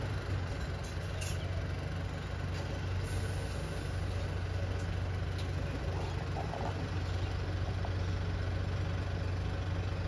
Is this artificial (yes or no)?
no